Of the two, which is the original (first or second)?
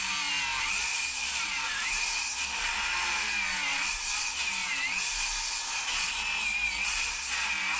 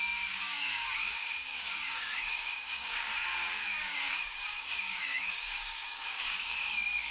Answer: first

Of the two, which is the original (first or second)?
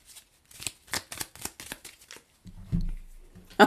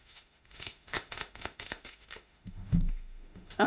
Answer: first